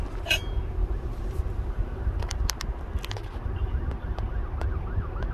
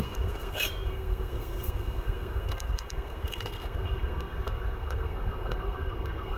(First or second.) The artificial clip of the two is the second